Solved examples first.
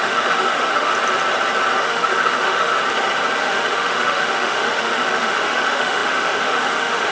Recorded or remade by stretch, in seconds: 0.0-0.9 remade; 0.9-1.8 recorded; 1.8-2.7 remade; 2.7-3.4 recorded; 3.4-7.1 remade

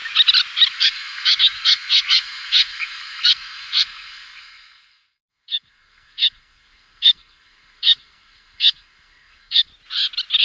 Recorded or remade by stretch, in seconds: 0.0-0.7 recorded; 0.7-9.7 remade; 9.7-10.4 recorded

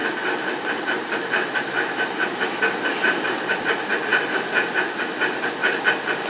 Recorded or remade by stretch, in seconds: 0.0-6.3 recorded

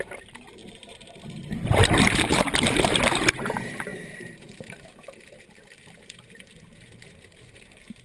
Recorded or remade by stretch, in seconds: 0.0-8.0 remade